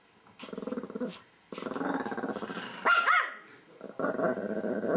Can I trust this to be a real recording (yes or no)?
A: yes